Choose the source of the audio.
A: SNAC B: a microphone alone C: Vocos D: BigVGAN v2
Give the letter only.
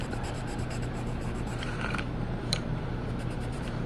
D